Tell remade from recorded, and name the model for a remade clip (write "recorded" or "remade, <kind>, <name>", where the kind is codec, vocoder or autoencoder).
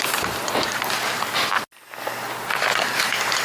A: recorded